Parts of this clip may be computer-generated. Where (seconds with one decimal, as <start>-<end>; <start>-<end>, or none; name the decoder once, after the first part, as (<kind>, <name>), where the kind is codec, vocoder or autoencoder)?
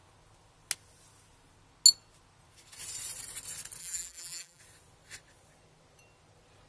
3.8-4.6 (vocoder, BigVGAN v2)